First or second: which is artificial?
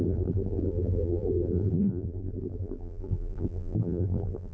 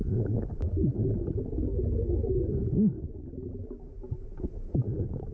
first